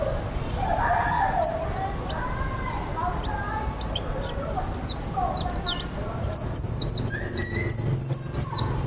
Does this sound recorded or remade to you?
recorded